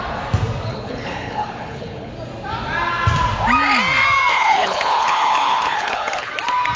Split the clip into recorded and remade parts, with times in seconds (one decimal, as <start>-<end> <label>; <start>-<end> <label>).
0.0-0.7 recorded; 0.7-2.1 remade; 2.1-4.3 recorded; 4.3-6.3 remade; 6.3-6.8 recorded